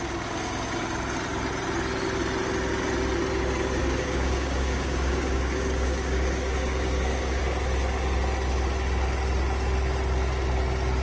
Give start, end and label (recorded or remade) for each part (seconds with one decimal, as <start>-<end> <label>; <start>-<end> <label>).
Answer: 0.0-3.8 recorded; 3.8-7.4 remade; 7.4-11.0 recorded